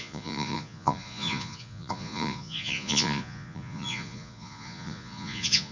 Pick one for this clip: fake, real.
fake